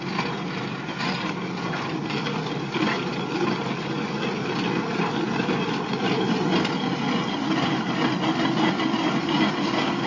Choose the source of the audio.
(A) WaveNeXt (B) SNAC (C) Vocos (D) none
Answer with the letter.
D